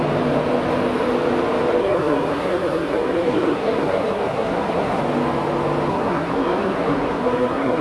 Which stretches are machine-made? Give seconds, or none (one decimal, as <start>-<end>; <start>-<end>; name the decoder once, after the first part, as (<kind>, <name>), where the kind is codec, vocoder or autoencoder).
1.8-5.0 (codec, SNAC); 5.9-7.8